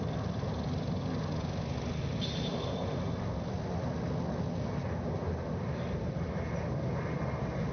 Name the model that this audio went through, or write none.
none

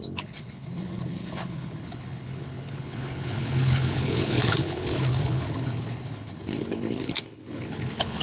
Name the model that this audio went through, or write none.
codec, HILCodec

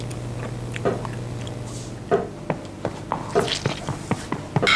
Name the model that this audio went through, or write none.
none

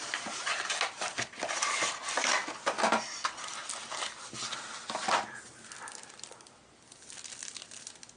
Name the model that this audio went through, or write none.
none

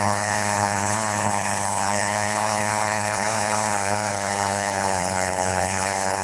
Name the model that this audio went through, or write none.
codec, HILCodec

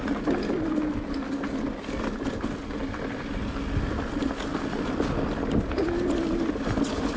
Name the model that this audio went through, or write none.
none